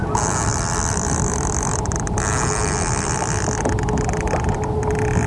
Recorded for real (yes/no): yes